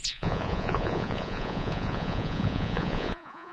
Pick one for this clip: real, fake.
fake